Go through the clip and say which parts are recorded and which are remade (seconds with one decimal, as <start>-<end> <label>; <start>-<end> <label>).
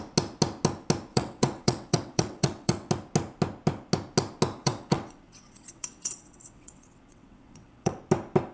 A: 0.0-1.1 recorded; 1.1-2.9 remade; 2.9-4.6 recorded; 4.6-8.0 remade; 8.0-8.5 recorded